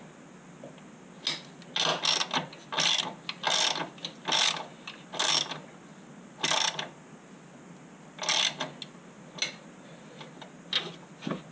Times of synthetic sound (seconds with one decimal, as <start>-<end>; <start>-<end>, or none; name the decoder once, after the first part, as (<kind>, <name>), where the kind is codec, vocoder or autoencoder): none